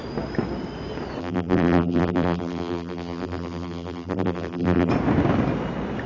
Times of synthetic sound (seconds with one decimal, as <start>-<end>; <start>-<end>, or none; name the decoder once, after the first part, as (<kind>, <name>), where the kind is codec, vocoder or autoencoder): 1.2-4.9 (vocoder, BigVGAN v2)